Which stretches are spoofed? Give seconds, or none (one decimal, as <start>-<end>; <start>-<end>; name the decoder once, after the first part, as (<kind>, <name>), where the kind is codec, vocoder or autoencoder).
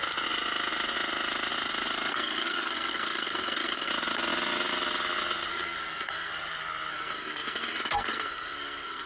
2.1-3.9 (codec, SNAC); 5.5-6.3; 6.9-9.1